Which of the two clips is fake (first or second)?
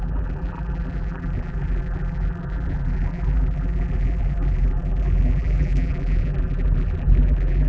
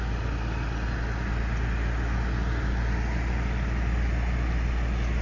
first